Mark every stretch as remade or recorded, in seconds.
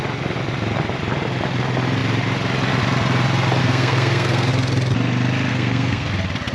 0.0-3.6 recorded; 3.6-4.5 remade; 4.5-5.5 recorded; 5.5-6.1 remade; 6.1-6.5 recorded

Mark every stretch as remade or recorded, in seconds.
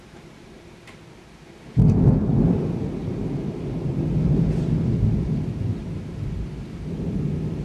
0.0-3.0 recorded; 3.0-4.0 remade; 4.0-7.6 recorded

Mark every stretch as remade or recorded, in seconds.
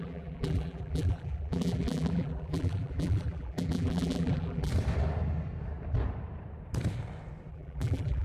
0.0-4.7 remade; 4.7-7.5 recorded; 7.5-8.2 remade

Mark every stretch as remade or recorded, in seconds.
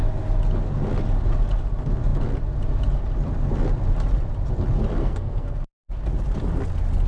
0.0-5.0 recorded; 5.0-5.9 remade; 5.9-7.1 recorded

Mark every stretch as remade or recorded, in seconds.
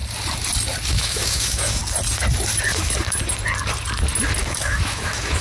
0.0-0.9 recorded; 0.9-1.8 remade; 1.8-4.4 recorded; 4.4-5.4 remade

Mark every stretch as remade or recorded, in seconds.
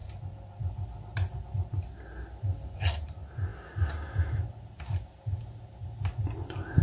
0.0-6.8 recorded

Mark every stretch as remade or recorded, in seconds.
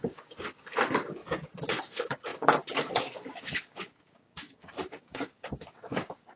0.0-1.2 remade; 1.2-1.8 recorded; 1.8-6.4 remade